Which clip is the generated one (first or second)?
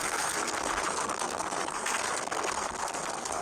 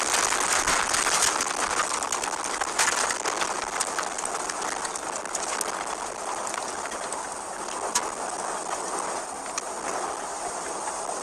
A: first